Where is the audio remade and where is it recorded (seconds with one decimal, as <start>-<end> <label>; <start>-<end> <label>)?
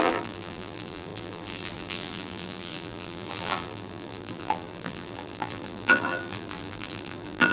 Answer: 0.0-7.5 remade